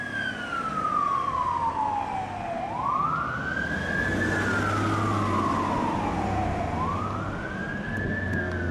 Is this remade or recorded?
recorded